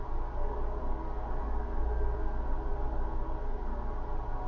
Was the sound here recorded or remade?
recorded